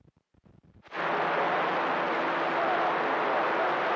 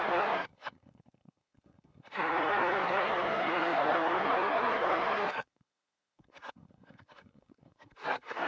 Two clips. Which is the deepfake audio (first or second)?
second